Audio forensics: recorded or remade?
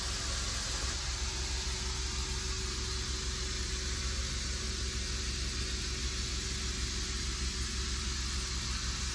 recorded